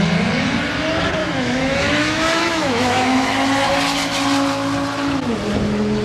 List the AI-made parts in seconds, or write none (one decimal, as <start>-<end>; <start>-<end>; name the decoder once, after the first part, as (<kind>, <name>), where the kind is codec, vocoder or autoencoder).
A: 1.2-3.7 (autoencoder, DAC-VAE)